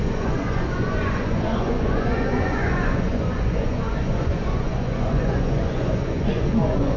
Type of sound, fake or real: fake